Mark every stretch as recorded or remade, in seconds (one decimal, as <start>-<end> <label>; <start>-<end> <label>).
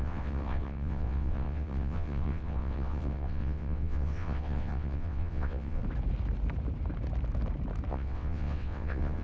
0.0-5.8 remade; 5.8-7.9 recorded; 7.9-9.2 remade